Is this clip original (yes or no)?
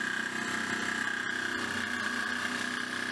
yes